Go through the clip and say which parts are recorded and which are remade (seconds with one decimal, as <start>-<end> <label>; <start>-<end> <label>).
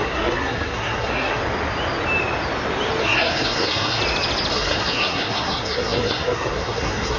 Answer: 0.0-1.4 remade; 1.4-3.0 recorded; 3.0-4.0 remade; 4.0-4.5 recorded; 4.5-7.2 remade